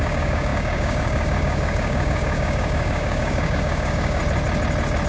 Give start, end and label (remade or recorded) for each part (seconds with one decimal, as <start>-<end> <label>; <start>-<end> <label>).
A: 0.0-4.2 remade; 4.2-5.1 recorded